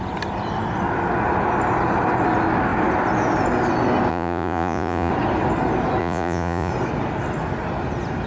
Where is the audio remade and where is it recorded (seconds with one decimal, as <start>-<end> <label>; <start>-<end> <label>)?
0.0-4.1 recorded; 4.1-5.1 remade; 5.1-6.0 recorded; 6.0-6.7 remade; 6.7-8.3 recorded